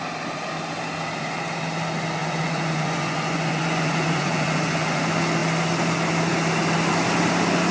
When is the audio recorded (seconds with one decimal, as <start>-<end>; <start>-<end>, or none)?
0.0-2.2; 5.0-7.7